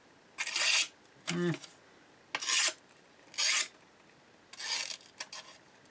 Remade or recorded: recorded